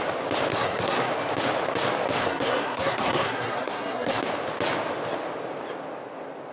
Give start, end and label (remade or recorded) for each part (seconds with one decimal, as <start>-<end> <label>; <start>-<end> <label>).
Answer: 0.0-0.5 recorded; 0.5-1.1 remade; 1.1-2.2 recorded; 2.2-4.2 remade; 4.2-6.5 recorded